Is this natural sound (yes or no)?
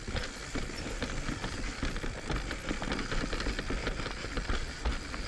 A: yes